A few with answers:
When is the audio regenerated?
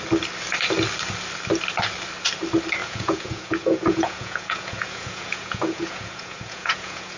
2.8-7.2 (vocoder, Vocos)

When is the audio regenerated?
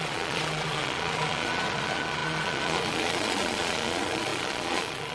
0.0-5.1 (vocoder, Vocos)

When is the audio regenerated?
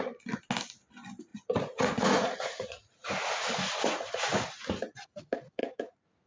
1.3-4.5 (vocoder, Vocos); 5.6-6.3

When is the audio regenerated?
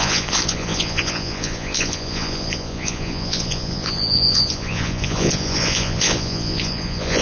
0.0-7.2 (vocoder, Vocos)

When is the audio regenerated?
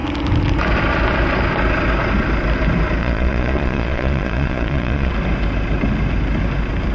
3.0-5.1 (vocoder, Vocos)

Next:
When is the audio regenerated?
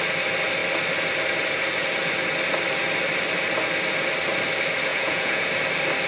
4.9-5.5 (vocoder, Vocos)